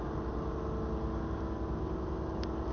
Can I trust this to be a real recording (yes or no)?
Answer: yes